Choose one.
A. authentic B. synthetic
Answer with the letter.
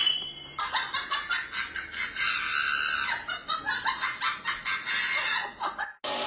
A